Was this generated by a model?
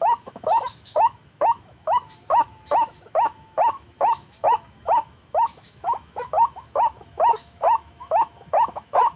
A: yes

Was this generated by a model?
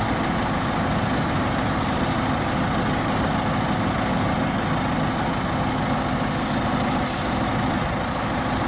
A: no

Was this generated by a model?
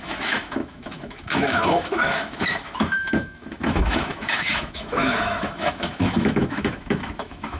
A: yes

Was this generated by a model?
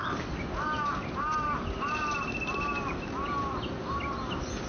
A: no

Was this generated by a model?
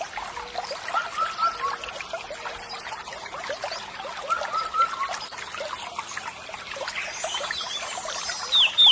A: no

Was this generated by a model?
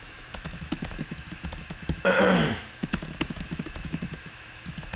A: yes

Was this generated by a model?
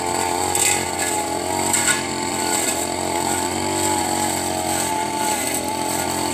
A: no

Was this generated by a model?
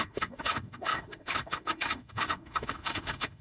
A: yes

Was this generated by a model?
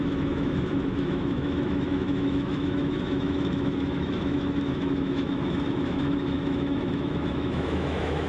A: yes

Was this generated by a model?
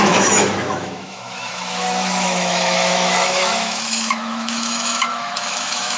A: yes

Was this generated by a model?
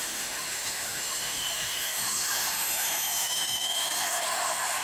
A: yes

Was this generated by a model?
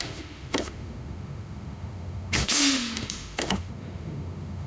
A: yes